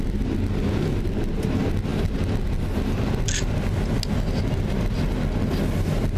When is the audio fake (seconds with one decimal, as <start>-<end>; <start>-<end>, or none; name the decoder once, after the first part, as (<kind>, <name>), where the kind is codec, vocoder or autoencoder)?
none